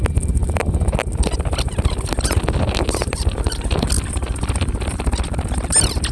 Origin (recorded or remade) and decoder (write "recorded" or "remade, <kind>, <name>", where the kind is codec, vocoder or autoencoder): recorded